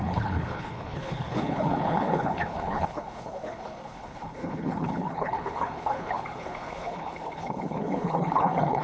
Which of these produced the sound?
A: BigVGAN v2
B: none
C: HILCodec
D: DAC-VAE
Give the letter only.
C